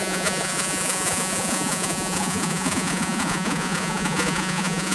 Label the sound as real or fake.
fake